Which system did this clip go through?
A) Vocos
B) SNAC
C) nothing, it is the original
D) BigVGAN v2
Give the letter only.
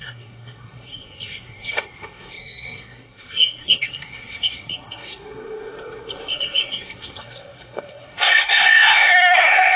B